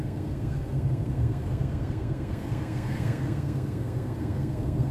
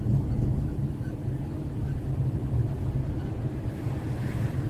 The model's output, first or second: first